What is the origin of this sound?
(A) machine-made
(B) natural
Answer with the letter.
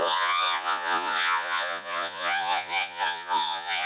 A